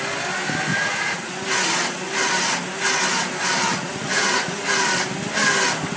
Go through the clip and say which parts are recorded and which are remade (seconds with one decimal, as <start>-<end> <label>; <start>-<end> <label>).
0.0-0.7 recorded; 0.7-1.3 remade; 1.3-3.7 recorded; 3.7-4.6 remade; 4.6-6.0 recorded